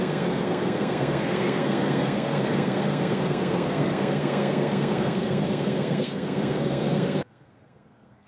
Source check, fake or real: fake